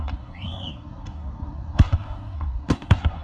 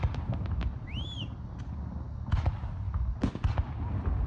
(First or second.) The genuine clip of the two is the second